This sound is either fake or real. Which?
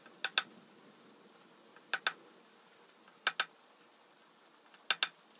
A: real